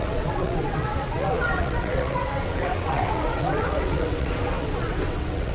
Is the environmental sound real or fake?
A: fake